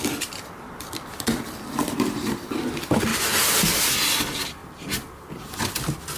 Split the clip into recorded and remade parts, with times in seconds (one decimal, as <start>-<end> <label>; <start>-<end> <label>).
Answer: 0.0-6.2 recorded